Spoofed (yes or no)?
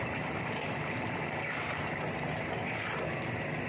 yes